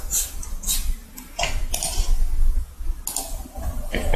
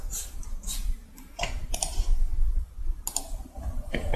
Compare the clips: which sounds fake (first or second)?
second